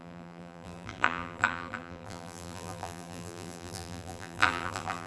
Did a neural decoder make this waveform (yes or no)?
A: yes